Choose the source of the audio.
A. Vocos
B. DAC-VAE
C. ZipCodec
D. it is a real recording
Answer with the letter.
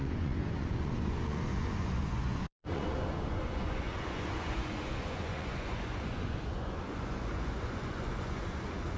A